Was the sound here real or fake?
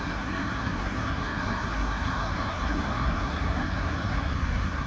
fake